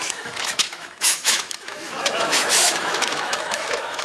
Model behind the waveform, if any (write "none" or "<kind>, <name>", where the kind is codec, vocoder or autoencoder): autoencoder, DAC-VAE